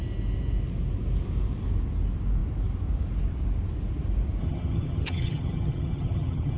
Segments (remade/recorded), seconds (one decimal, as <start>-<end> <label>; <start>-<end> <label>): 0.0-4.4 recorded; 4.4-6.6 remade